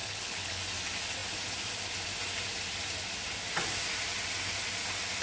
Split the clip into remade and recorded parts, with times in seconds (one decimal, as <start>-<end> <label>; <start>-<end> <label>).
0.0-0.6 remade; 0.6-5.2 recorded